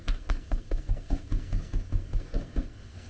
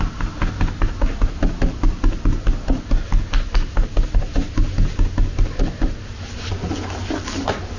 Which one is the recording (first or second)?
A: second